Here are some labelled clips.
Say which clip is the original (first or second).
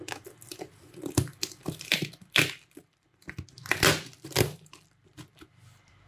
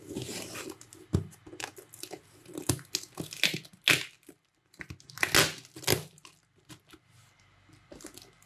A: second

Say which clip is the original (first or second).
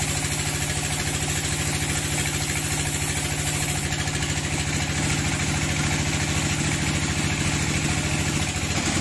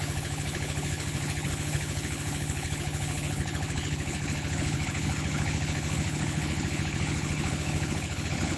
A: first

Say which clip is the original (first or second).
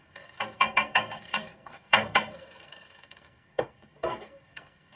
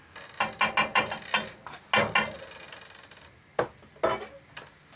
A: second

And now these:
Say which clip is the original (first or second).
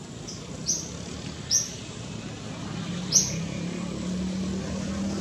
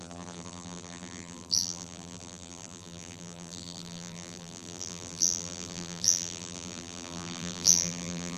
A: first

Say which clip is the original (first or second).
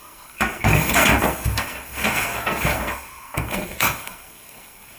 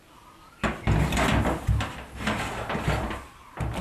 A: second